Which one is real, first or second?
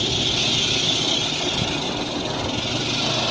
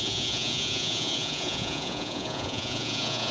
first